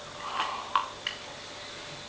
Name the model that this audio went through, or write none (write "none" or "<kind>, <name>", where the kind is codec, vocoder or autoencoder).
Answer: none